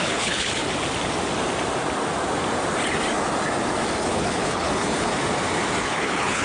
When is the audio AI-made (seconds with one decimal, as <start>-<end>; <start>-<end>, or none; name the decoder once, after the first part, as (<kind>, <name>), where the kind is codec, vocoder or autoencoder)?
0.0-0.6 (codec, HILCodec); 4.0-5.1; 5.8-6.4